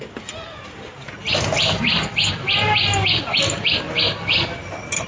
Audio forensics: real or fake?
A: real